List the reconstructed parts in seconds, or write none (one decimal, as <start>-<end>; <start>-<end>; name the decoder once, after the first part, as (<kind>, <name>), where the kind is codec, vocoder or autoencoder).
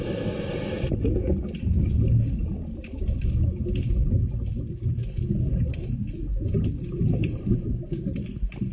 none